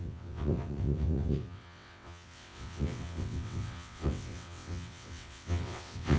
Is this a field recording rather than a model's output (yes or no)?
no